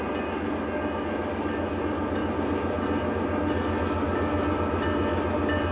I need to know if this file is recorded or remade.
recorded